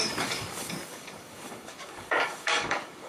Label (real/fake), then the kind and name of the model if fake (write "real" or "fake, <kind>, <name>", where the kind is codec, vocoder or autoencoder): fake, codec, DAC